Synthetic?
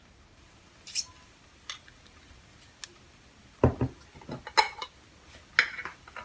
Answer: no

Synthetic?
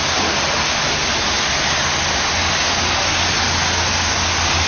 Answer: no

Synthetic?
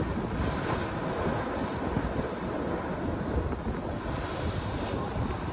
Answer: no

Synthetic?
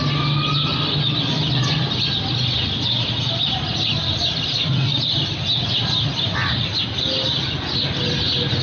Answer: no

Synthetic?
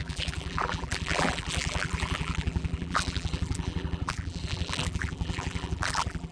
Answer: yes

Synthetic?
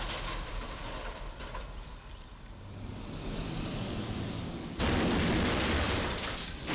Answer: yes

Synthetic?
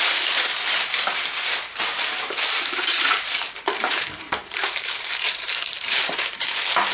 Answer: yes